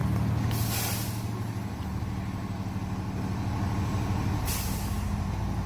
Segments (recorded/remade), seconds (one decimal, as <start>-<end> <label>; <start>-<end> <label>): 0.0-5.7 recorded